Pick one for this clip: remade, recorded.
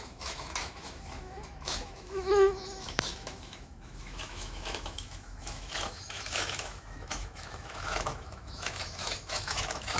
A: remade